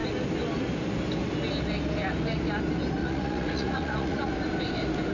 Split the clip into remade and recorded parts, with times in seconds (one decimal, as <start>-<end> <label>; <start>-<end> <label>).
0.0-3.0 recorded; 3.0-4.3 remade; 4.3-5.1 recorded